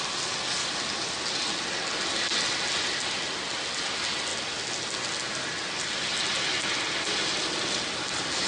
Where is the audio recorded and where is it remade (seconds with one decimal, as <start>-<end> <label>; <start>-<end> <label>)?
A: 0.0-8.5 recorded